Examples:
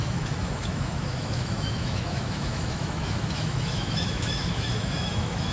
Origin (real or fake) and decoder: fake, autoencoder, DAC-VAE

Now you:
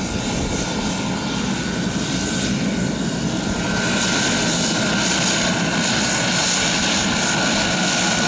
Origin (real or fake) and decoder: real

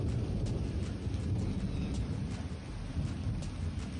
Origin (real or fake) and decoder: real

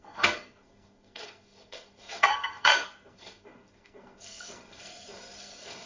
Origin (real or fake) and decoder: fake, codec, SNAC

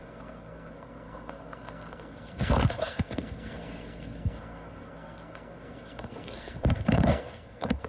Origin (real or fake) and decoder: fake, codec, SNAC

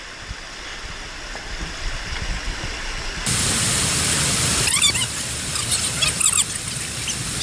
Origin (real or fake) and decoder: real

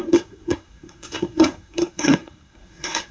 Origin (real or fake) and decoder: fake, codec, SNAC